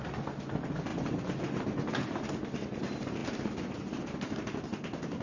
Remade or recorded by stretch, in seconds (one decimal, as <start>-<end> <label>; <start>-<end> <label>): 0.0-0.9 recorded; 0.9-1.9 remade; 1.9-5.2 recorded